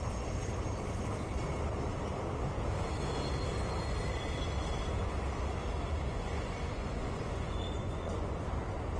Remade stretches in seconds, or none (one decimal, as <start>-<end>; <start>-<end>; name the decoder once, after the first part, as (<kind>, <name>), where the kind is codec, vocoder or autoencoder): 6.1-8.5 (vocoder, Vocos)